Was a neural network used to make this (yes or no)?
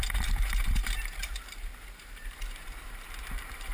yes